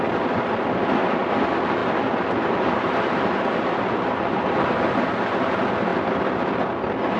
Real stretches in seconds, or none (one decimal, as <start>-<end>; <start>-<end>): 0.0-1.8; 5.0-7.2